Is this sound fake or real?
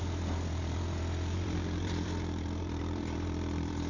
fake